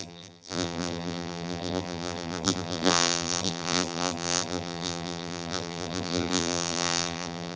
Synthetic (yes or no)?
yes